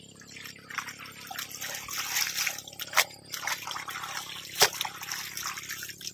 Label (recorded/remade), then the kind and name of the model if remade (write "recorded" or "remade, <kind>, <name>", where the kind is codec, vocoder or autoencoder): recorded